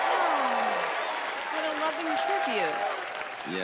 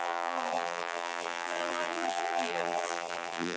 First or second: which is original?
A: first